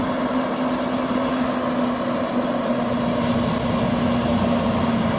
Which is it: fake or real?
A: real